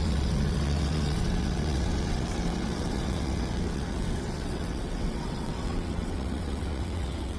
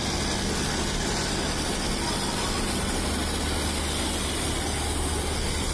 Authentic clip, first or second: second